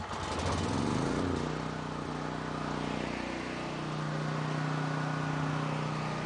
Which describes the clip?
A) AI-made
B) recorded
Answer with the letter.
B